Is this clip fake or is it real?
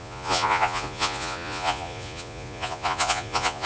fake